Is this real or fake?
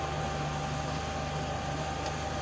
real